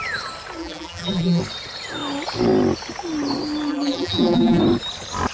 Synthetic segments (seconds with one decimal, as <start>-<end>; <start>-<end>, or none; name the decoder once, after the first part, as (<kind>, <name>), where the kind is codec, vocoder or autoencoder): 0.6-1.4 (vocoder, BigVGAN v2); 3.7-4.6